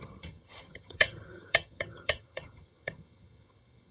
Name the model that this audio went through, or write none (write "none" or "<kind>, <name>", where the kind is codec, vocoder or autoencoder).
vocoder, HiFi-GAN